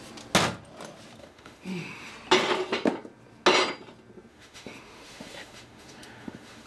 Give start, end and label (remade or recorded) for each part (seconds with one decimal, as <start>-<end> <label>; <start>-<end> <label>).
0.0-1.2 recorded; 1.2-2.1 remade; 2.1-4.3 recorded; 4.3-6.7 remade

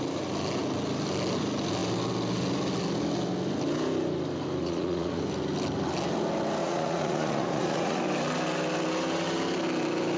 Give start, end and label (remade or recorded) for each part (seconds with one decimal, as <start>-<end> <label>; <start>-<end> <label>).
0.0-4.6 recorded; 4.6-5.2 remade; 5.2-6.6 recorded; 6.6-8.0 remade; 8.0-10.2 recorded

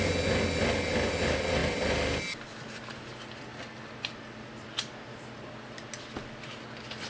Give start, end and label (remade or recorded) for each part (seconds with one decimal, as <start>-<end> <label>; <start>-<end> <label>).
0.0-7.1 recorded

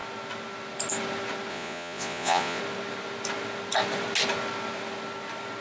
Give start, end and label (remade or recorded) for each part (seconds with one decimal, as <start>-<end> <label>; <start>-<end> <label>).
0.0-1.5 recorded; 1.5-2.6 remade; 2.6-5.6 recorded

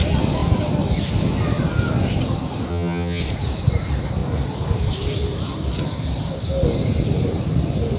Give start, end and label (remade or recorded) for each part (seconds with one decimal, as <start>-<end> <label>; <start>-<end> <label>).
0.0-2.7 recorded; 2.7-3.2 remade; 3.2-8.0 recorded